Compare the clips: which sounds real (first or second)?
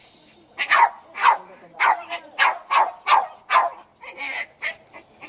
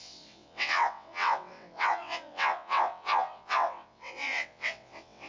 first